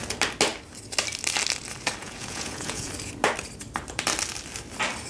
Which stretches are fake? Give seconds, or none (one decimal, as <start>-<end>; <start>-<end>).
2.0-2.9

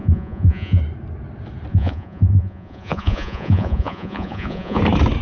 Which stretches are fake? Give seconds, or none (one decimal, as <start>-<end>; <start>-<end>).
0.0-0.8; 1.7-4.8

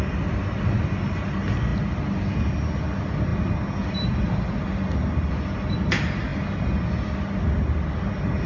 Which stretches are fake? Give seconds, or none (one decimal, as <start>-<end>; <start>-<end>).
none

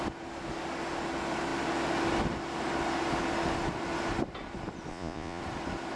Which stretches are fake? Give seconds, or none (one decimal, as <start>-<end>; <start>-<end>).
4.9-5.4

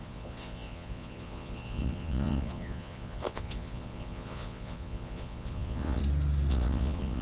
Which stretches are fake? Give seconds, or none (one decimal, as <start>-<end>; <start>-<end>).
0.0-6.0; 6.5-7.2